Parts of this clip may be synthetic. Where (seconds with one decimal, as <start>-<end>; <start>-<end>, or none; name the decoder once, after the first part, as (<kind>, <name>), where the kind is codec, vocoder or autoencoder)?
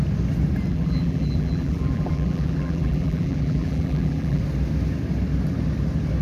0.7-4.4 (vocoder, BigVGAN v2)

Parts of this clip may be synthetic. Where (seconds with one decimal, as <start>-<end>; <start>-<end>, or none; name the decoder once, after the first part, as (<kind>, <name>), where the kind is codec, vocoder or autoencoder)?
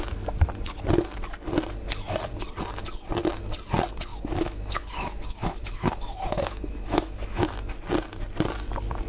4.1-7.5 (autoencoder, DAC-VAE)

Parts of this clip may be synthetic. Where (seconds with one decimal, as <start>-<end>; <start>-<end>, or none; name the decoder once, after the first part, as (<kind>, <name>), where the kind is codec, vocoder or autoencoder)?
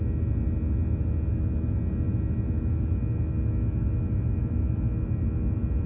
none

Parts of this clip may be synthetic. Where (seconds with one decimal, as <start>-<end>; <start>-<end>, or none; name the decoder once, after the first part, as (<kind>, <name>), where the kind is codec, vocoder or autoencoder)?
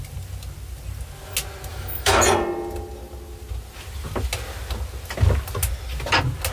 1.7-2.2 (autoencoder, DAC-VAE)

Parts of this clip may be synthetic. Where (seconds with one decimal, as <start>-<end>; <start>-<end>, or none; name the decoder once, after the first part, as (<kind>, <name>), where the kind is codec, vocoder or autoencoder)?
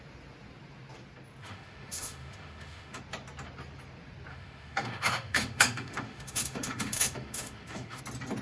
1.4-3.0 (autoencoder, DAC-VAE); 4.3-8.0